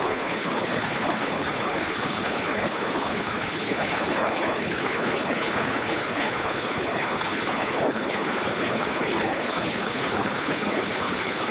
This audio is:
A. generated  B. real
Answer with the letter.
A